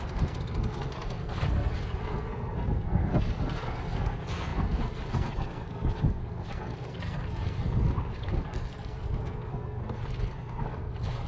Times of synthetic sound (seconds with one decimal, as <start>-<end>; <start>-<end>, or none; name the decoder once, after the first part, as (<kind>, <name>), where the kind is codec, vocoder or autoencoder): 0.0-11.3 (codec, SNAC)